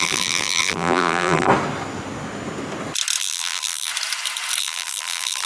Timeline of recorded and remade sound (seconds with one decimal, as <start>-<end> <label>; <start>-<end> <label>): 0.0-1.5 remade; 1.5-3.2 recorded; 3.2-3.9 remade; 3.9-4.6 recorded; 4.6-5.5 remade